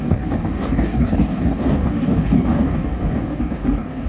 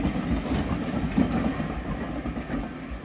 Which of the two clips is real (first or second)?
second